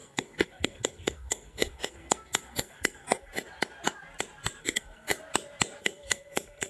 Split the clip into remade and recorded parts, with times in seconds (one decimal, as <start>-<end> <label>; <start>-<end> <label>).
0.0-3.3 remade; 3.3-4.6 recorded; 4.6-5.1 remade; 5.1-5.8 recorded; 5.8-6.7 remade